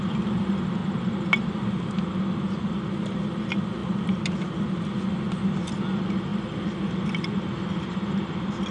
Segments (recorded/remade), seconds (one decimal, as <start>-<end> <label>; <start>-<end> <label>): 0.0-3.8 recorded; 3.8-4.6 remade; 4.6-8.7 recorded